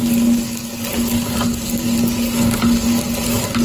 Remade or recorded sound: recorded